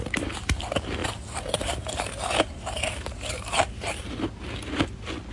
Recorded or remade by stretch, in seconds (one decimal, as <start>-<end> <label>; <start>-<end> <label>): 0.0-1.0 recorded; 1.0-4.2 remade; 4.2-5.3 recorded